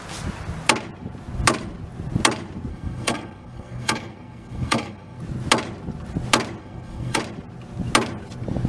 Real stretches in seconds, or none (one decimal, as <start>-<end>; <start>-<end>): 0.0-2.7; 5.2-6.6; 7.2-8.7